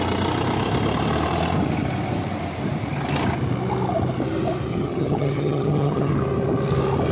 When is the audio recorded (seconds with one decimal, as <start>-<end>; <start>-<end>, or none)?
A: 0.0-4.7; 6.1-7.1